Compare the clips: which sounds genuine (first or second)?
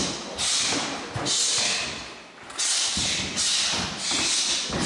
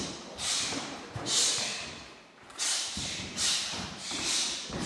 first